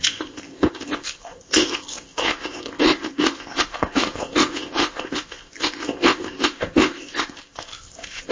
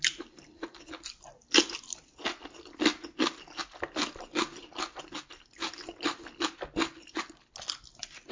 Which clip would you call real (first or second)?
second